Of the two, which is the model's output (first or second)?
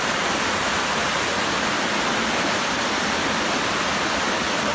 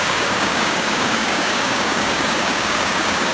second